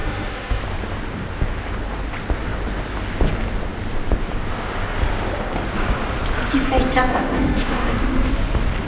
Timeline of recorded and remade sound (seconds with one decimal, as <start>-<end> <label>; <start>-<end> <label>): 0.0-0.6 remade; 0.6-7.1 recorded; 7.1-8.3 remade; 8.3-8.9 recorded